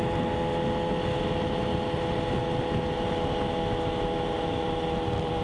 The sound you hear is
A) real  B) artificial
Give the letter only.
A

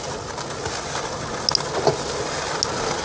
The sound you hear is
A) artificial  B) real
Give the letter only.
B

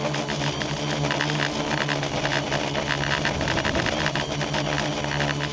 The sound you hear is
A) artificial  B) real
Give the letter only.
B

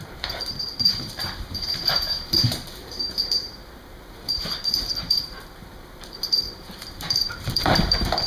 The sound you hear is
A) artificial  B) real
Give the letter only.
A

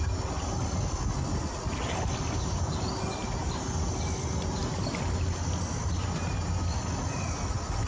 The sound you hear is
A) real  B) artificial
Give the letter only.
A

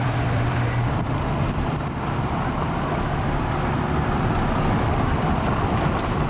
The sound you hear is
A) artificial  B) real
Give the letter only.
A